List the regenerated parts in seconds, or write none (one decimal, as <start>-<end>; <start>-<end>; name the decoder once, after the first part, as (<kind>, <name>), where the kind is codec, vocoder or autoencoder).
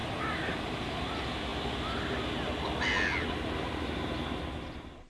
none